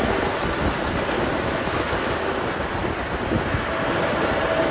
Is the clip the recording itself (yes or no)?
yes